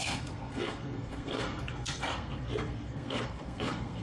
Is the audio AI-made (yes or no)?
yes